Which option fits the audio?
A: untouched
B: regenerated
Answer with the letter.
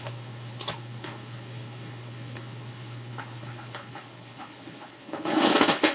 B